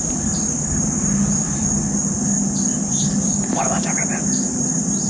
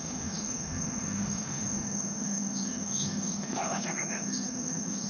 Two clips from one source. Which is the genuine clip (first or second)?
first